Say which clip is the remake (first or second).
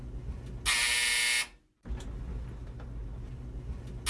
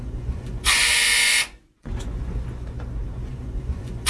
second